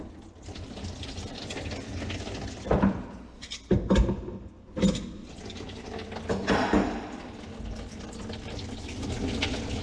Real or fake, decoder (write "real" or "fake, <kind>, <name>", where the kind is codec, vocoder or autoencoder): real